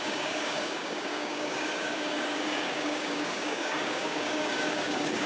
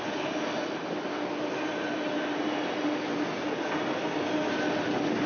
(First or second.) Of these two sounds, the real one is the second